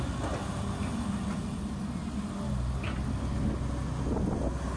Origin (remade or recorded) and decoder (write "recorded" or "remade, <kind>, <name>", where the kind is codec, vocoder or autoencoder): recorded